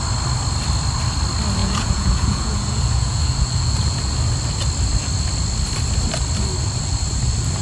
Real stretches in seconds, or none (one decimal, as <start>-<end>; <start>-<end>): 0.0-1.6; 4.1-7.6